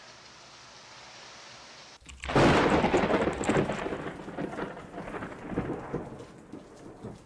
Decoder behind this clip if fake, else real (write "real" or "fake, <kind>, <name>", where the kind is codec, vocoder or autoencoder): real